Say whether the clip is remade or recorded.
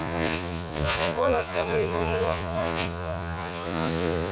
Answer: remade